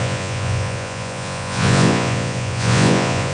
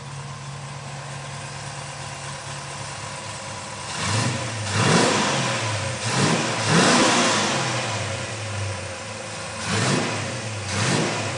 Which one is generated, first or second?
first